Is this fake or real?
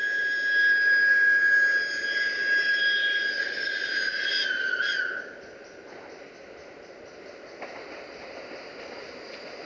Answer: real